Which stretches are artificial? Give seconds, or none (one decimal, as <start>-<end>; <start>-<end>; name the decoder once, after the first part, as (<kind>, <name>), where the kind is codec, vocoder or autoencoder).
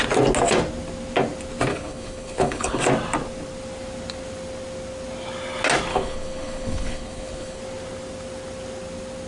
1.7-2.8 (codec, HILCodec); 5.9-7.6